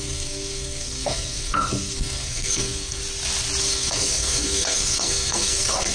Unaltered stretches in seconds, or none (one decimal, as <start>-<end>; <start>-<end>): 3.0-3.6